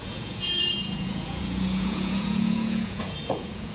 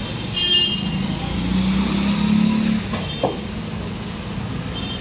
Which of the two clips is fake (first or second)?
first